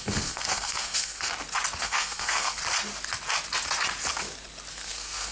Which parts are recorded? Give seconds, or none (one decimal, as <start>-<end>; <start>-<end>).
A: 1.3-1.8; 2.6-4.7